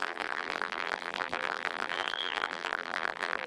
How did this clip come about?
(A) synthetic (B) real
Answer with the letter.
A